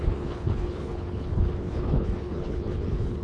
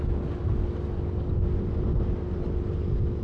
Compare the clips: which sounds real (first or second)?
second